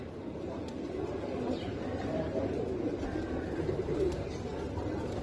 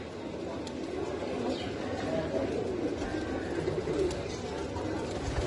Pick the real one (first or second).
second